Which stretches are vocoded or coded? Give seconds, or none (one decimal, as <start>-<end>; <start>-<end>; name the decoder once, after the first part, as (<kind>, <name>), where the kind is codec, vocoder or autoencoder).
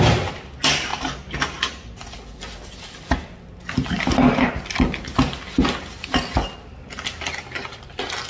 none